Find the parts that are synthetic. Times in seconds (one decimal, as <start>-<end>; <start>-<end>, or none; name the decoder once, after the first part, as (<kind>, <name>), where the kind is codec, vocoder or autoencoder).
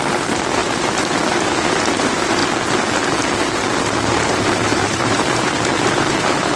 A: 0.0-2.4 (vocoder, BigVGAN v2); 4.1-6.6